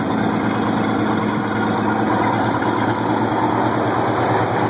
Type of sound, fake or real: real